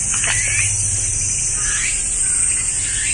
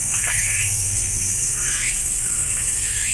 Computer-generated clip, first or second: second